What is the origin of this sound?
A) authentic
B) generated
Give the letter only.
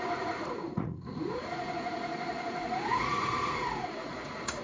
B